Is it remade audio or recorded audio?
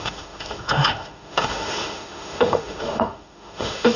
remade